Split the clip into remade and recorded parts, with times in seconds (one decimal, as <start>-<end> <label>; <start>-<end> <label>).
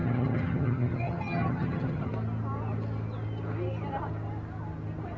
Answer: 0.0-2.1 remade; 2.1-5.2 recorded